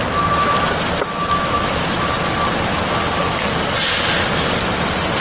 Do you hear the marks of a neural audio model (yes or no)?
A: no